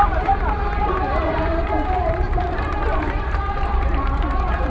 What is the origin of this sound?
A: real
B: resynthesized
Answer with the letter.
B